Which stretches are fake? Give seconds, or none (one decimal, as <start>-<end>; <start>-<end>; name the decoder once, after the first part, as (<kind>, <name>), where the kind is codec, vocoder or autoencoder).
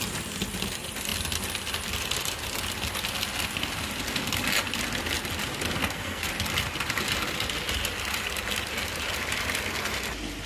5.8-6.3 (codec, SNAC)